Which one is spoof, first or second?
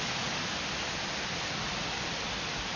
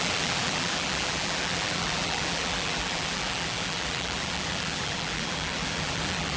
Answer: second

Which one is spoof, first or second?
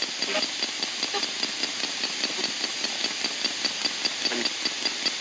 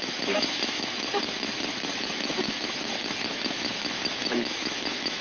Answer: second